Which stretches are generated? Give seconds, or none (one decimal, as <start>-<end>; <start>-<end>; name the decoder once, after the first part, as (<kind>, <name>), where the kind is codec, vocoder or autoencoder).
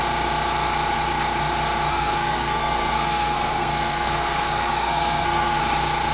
1.9-5.6 (codec, SNAC)